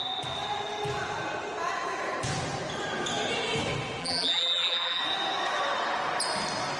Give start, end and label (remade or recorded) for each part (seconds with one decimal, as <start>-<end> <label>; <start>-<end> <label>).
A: 0.0-4.0 recorded; 4.0-5.0 remade; 5.0-6.8 recorded